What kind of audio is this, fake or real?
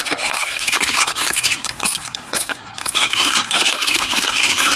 fake